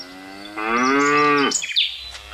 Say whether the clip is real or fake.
real